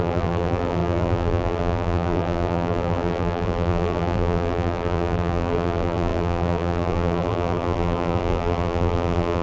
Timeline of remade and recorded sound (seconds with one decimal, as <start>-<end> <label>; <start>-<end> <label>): 0.0-9.4 remade